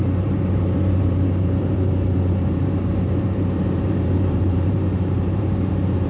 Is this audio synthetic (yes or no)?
yes